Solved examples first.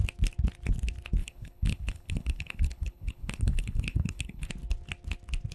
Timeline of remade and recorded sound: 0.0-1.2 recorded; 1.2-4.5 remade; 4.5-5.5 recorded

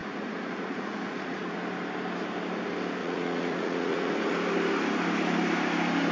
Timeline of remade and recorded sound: 0.0-1.6 remade; 1.6-3.0 recorded; 3.0-4.1 remade; 4.1-6.1 recorded

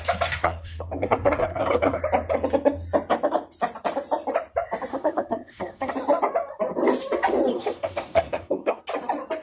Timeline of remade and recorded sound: 0.0-0.4 recorded; 0.4-2.0 remade; 2.0-4.9 recorded; 4.9-5.9 remade; 5.9-7.5 recorded; 7.5-8.8 remade; 8.8-9.4 recorded

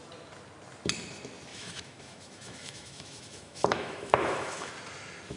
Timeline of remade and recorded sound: 0.0-1.5 recorded; 1.5-4.7 remade; 4.7-5.4 recorded

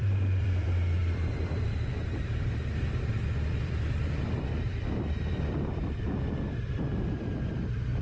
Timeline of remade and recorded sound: 0.0-8.0 remade

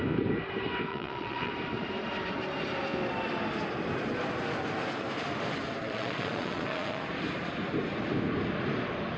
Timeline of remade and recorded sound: 0.0-0.9 recorded; 0.9-1.5 remade; 1.5-5.8 recorded; 5.8-7.0 remade; 7.0-9.2 recorded